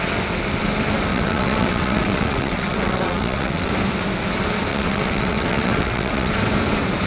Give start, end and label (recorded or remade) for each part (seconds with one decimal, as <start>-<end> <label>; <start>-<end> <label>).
0.0-1.1 recorded; 1.1-3.7 remade; 3.7-4.7 recorded; 4.7-6.3 remade; 6.3-7.1 recorded